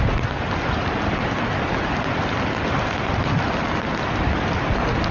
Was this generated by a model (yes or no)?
no